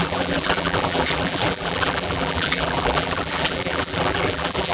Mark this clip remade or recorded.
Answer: remade